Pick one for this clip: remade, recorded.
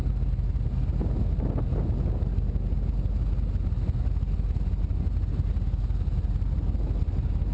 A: recorded